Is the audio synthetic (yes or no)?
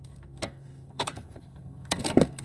yes